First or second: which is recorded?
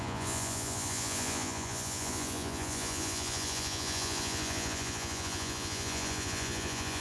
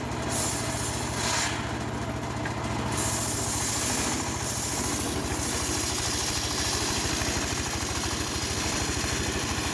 second